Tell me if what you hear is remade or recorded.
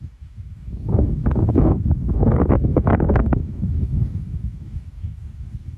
remade